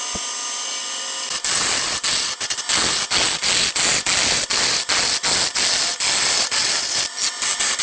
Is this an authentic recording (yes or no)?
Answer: yes